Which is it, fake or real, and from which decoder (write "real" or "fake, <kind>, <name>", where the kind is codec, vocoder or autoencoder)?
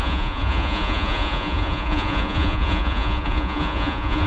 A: fake, vocoder, Vocos